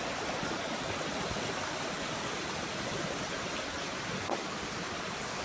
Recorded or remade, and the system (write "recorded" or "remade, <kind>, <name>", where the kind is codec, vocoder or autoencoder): recorded